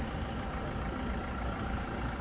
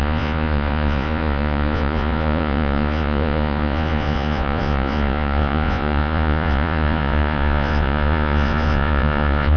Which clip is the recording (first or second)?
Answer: first